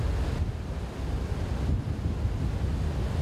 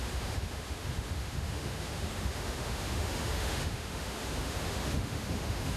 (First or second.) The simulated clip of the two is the second